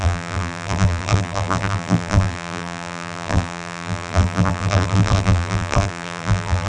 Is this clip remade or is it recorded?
remade